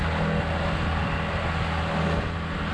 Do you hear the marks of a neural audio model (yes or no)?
no